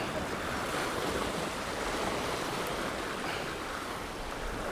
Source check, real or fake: fake